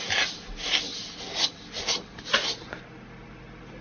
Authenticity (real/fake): real